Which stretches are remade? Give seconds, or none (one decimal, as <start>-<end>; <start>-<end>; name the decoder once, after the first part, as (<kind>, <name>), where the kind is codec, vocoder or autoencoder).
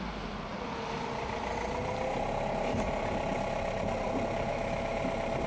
4.5-5.0 (autoencoder, DAC-VAE)